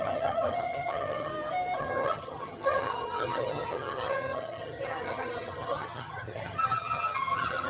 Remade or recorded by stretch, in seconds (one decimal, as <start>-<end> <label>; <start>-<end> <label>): 0.0-1.3 remade; 1.3-1.8 recorded; 1.8-7.7 remade